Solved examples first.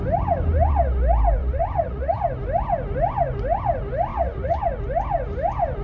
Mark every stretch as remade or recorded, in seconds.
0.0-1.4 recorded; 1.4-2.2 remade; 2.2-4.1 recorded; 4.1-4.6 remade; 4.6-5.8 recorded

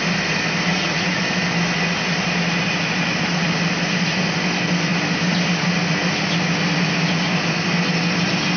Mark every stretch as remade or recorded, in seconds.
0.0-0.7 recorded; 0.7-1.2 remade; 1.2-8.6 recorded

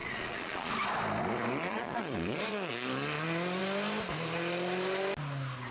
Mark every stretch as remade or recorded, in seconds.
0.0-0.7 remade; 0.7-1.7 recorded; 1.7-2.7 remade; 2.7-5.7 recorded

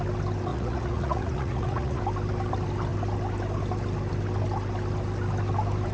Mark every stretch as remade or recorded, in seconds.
0.0-0.5 recorded; 0.5-2.0 remade; 2.0-5.9 recorded